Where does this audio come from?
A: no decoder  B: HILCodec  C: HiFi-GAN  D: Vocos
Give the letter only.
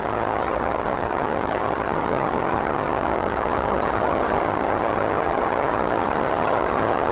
C